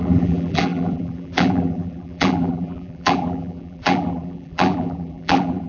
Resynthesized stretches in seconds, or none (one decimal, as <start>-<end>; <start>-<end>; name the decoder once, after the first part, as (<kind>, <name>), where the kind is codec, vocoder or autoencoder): 0.0-5.7 (vocoder, BigVGAN v2)